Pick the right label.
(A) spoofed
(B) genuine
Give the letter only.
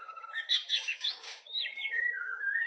A